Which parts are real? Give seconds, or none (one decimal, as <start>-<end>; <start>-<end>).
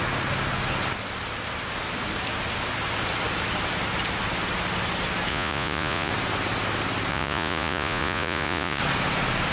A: 0.0-5.3; 6.1-7.1; 8.8-9.5